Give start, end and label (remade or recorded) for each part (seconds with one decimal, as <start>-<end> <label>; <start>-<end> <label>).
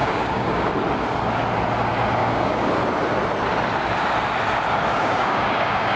0.0-0.7 remade; 0.7-2.2 recorded; 2.2-2.7 remade; 2.7-4.9 recorded; 4.9-6.0 remade